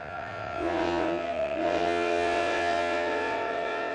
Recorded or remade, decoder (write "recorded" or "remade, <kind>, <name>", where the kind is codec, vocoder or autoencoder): remade, vocoder, WaveNeXt